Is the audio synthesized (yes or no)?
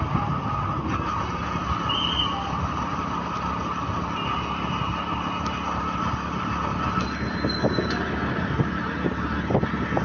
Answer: no